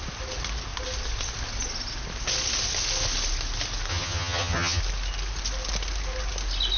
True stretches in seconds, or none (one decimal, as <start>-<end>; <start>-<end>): 0.0-3.9; 4.8-6.8